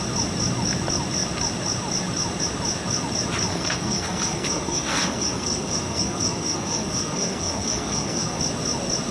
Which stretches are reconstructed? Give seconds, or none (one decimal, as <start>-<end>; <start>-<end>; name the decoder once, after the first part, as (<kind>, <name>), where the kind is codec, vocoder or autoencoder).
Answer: 3.5-8.4 (codec, SNAC)